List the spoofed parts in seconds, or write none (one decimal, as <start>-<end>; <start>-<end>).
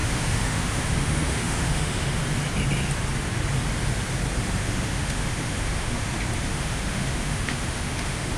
0.0-2.2; 4.6-6.1; 6.5-8.4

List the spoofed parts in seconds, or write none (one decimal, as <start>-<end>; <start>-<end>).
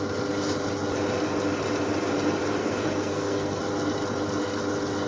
2.6-3.6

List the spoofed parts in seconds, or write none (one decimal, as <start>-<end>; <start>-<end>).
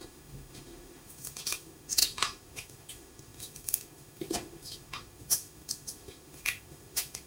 0.0-7.3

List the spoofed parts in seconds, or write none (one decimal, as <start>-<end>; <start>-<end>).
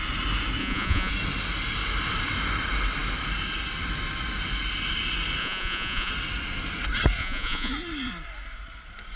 0.6-1.1; 5.4-6.1; 7.2-7.7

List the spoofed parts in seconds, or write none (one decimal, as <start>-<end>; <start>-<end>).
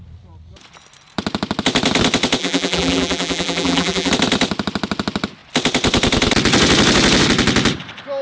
2.4-4.1